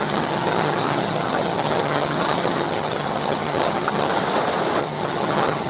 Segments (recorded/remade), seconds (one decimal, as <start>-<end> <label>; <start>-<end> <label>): 0.0-4.1 remade; 4.1-4.8 recorded; 4.8-5.7 remade